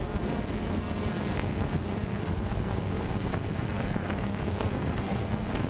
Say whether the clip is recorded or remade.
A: remade